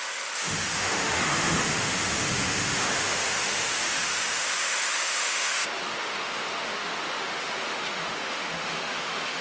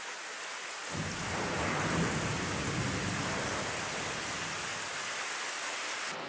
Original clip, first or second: second